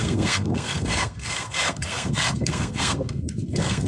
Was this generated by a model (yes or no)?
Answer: yes